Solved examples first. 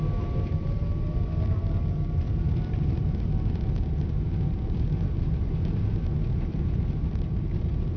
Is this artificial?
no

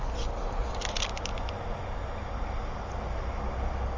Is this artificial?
no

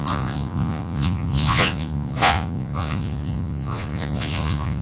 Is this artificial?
yes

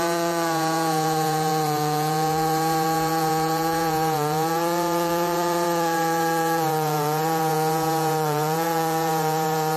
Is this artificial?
yes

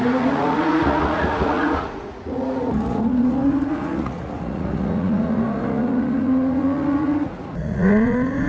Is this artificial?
yes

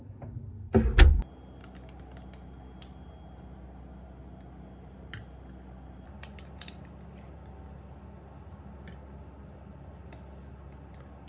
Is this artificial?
no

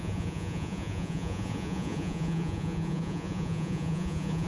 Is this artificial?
yes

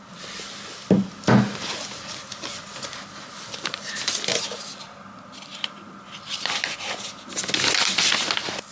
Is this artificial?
no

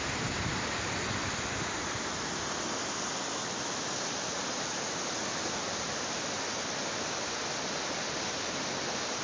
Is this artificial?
no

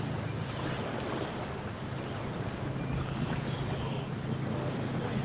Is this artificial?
no